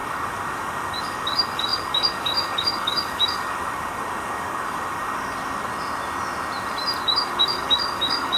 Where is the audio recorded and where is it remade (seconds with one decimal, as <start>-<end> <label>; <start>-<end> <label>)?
0.0-5.7 remade; 5.7-7.0 recorded; 7.0-8.4 remade